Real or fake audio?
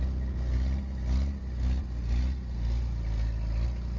real